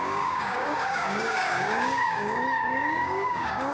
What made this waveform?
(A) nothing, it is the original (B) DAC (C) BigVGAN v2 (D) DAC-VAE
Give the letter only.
B